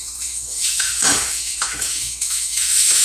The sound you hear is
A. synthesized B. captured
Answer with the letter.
A